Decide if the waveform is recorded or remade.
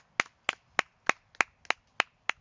recorded